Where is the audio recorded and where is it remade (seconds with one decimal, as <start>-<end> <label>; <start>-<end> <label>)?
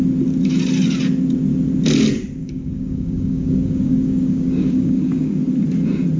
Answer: 0.0-2.4 recorded; 2.4-5.3 remade; 5.3-6.2 recorded